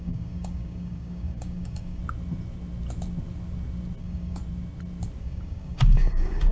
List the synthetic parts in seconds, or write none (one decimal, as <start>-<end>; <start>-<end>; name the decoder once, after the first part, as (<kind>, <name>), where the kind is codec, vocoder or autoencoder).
0.0-2.0 (codec, DAC); 4.0-4.4; 5.2-6.5